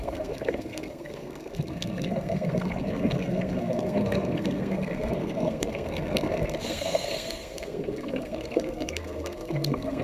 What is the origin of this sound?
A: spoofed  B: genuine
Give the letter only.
A